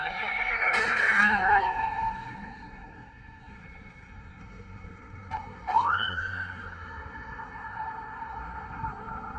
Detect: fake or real fake